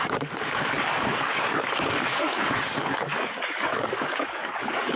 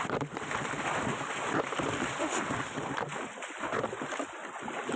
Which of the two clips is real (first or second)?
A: second